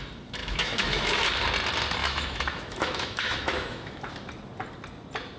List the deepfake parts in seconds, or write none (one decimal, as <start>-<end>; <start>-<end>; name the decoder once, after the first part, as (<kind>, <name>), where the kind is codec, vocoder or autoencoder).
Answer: 0.4-1.3 (autoencoder, DAC-VAE); 2.0-4.1